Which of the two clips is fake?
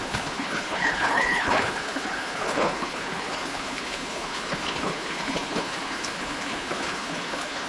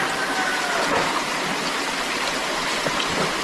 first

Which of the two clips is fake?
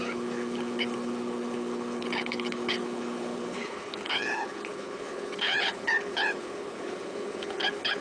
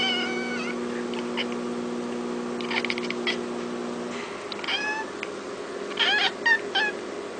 first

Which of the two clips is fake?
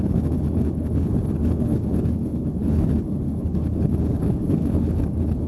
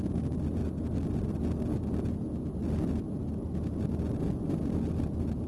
first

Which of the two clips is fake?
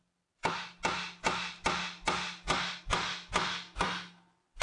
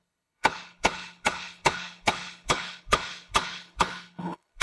second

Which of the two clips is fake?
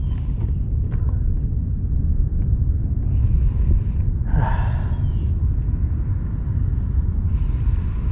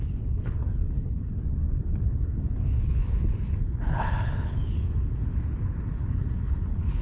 second